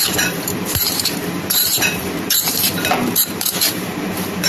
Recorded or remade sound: remade